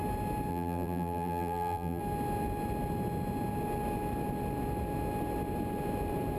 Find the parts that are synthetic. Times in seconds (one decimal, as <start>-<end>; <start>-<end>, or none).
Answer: 0.5-2.0